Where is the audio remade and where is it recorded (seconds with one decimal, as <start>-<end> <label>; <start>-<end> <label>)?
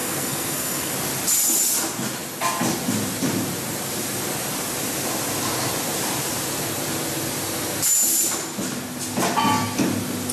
0.0-0.9 remade; 0.9-10.3 recorded